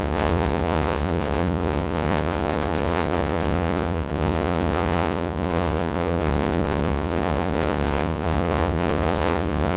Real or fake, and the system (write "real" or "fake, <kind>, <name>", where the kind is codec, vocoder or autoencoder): fake, vocoder, Vocos